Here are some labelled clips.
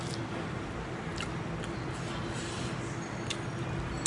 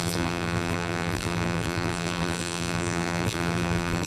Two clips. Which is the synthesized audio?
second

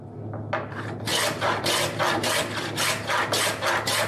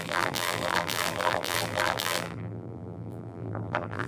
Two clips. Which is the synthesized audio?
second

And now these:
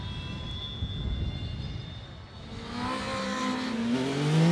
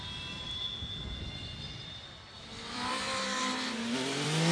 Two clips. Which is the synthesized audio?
second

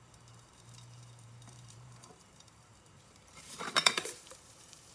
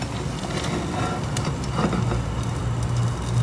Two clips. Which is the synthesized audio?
first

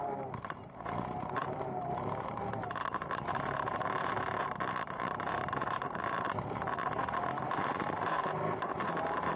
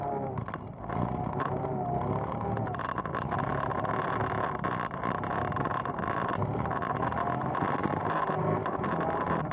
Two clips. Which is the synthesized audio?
first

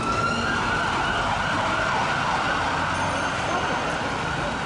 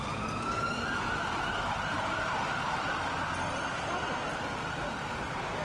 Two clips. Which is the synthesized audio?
second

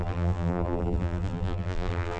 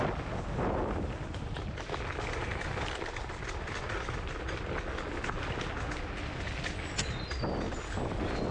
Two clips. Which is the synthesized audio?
first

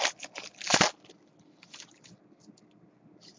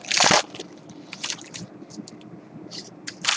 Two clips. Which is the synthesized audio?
second